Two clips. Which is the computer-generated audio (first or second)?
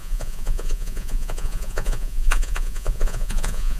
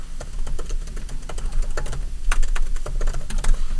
first